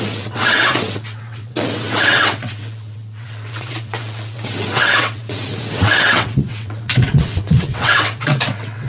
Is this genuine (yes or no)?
no